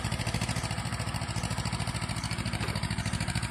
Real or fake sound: fake